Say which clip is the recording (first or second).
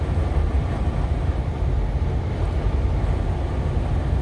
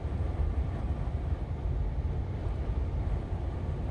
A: first